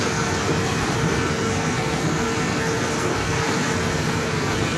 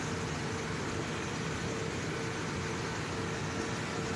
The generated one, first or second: first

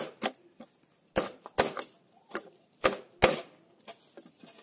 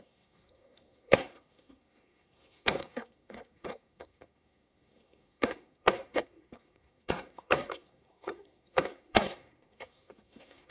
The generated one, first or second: second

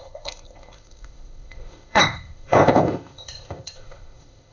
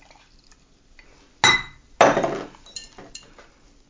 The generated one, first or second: first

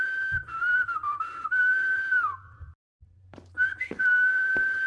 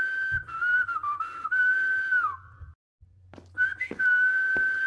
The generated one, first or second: first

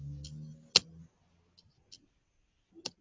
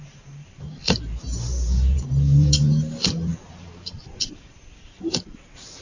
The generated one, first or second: second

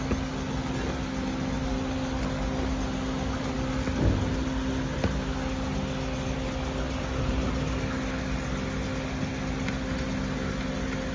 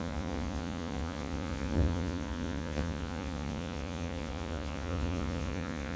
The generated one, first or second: second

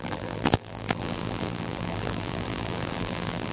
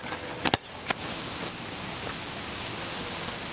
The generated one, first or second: first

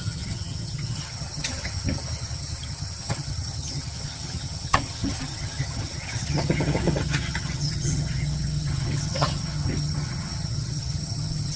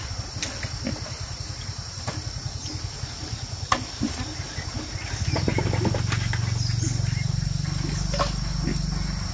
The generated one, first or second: first